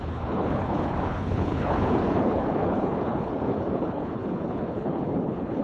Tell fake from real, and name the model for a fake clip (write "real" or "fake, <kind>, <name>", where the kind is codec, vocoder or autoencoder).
fake, codec, HILCodec